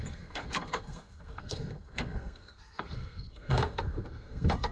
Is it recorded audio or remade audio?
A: remade